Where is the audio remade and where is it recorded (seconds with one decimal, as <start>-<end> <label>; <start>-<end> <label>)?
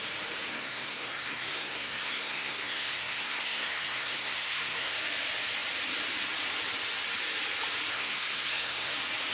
0.0-0.5 recorded; 0.5-5.0 remade; 5.0-7.9 recorded; 7.9-8.9 remade; 8.9-9.3 recorded